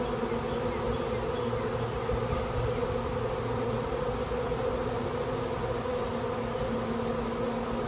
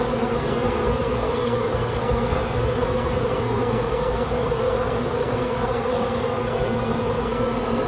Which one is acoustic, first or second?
first